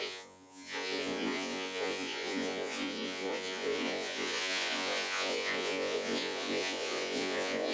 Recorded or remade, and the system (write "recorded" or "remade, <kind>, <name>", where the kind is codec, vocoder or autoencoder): remade, vocoder, Vocos